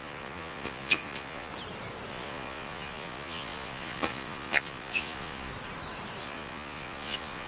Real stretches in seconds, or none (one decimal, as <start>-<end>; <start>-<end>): 1.5-2.1; 5.5-6.2